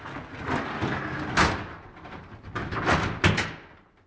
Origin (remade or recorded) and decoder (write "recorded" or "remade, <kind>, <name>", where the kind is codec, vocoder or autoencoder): recorded